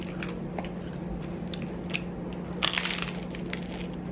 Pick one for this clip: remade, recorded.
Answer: recorded